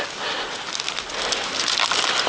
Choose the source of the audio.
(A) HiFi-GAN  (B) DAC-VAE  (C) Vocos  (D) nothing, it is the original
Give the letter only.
D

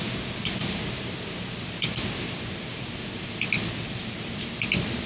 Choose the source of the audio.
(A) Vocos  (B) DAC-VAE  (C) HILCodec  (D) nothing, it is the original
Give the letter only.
D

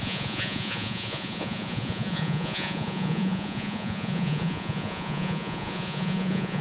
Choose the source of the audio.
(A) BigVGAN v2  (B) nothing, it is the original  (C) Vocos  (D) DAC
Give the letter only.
C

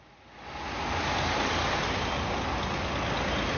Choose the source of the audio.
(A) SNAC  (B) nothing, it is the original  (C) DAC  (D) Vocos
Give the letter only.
B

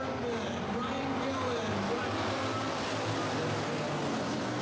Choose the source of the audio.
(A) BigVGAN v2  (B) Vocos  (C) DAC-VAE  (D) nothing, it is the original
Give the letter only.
D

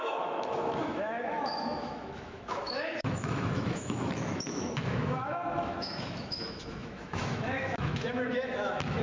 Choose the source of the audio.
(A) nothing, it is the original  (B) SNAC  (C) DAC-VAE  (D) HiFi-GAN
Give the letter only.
C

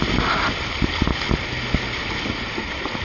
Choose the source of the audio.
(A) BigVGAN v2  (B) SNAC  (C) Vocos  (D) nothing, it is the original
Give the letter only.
D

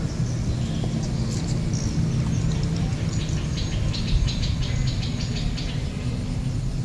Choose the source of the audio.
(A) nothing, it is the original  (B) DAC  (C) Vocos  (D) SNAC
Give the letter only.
A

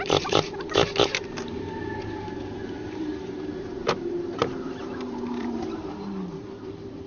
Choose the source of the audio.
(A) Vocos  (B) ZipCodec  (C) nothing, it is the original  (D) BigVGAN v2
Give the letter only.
D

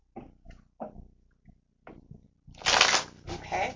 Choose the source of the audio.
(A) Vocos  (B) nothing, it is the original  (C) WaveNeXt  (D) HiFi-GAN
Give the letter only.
B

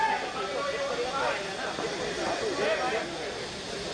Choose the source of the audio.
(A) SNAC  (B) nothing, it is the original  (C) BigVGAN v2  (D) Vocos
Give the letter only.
B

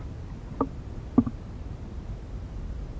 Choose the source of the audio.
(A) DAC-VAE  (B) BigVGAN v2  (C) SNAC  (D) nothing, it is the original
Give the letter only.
D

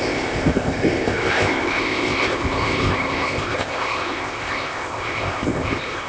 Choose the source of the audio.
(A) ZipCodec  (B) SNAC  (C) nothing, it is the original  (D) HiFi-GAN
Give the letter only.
A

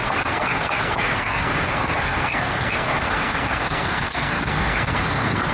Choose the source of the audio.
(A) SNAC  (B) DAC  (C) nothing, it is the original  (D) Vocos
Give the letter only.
A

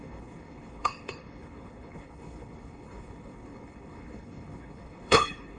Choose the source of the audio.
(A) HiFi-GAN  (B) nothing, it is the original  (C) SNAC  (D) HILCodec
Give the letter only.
D